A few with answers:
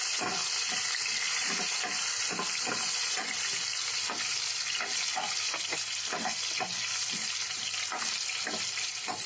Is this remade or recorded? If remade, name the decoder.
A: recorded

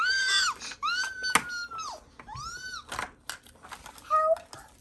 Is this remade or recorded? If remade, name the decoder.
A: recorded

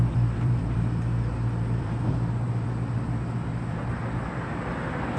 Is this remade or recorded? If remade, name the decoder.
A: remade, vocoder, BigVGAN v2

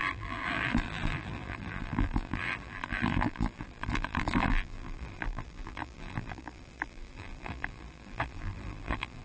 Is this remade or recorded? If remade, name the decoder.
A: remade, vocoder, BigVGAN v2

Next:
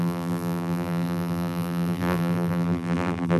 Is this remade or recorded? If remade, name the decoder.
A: remade, vocoder, BigVGAN v2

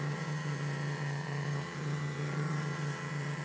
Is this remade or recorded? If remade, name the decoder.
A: remade, vocoder, HiFi-GAN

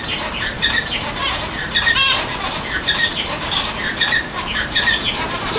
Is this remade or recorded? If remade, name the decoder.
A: remade, vocoder, BigVGAN v2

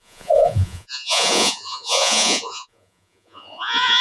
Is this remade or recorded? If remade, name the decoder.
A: remade, vocoder, Vocos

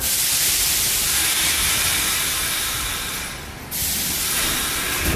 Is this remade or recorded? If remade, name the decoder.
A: recorded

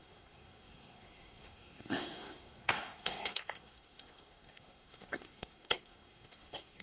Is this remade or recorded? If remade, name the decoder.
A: remade, codec, SNAC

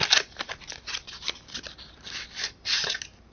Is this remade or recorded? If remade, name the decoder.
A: recorded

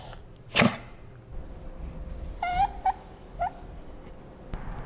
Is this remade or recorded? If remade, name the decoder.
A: recorded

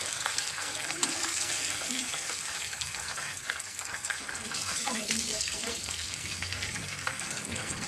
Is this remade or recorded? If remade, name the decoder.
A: remade, codec, SNAC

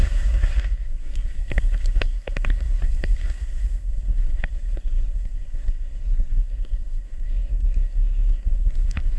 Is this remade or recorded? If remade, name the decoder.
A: remade, codec, SNAC